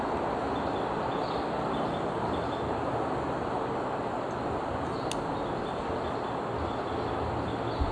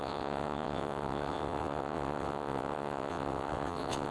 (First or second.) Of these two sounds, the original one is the first